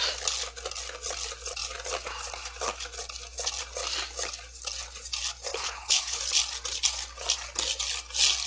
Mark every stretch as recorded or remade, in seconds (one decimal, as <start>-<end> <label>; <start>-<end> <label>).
0.0-5.5 recorded; 5.5-6.2 remade; 6.2-8.5 recorded